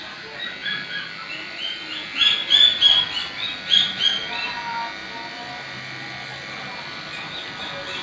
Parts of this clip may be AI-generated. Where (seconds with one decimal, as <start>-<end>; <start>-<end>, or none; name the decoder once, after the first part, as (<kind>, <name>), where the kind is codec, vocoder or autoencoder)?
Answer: 5.0-7.4 (vocoder, BigVGAN v2)